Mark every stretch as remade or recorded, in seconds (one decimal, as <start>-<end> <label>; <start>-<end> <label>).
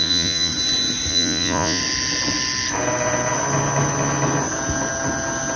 0.0-0.5 remade; 0.5-1.1 recorded; 1.1-1.8 remade; 1.8-5.6 recorded